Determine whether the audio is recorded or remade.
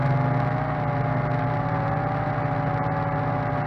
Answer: recorded